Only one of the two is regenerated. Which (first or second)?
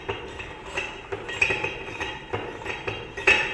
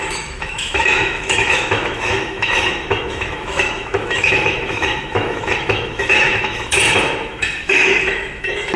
second